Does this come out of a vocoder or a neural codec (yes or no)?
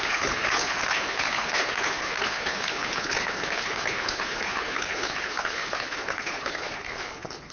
yes